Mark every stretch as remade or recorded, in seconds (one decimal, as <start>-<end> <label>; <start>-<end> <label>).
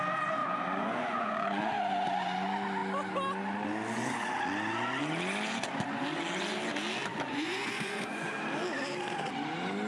0.0-0.4 recorded; 0.4-1.7 remade; 1.7-7.3 recorded; 7.3-8.3 remade; 8.3-9.9 recorded